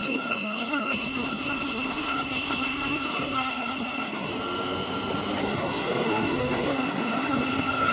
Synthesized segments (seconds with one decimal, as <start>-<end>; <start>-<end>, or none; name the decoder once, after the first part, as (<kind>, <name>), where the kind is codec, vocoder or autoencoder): 0.0-4.3 (codec, SNAC); 5.4-7.9